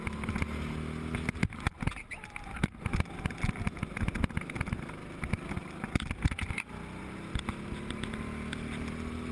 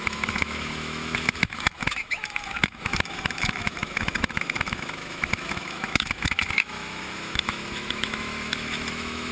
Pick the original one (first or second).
first